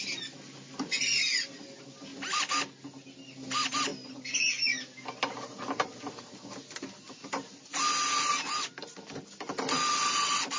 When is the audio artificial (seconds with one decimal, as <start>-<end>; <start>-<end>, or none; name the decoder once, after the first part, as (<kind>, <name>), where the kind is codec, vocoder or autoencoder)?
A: none